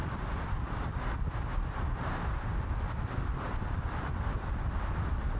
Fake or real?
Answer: real